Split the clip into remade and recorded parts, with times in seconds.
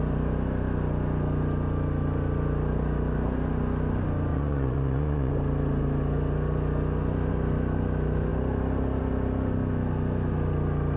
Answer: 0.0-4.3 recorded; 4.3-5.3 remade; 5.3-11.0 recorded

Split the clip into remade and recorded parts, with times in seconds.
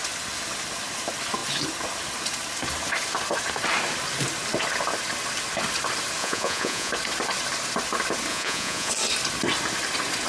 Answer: 0.0-6.2 recorded; 6.2-6.9 remade; 6.9-8.3 recorded; 8.3-8.9 remade; 8.9-10.3 recorded